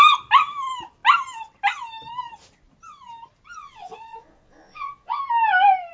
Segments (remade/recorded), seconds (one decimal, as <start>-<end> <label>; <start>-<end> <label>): 0.0-3.6 recorded; 3.6-5.2 remade; 5.2-5.9 recorded